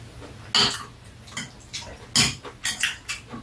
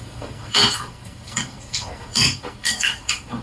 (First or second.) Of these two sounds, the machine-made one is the second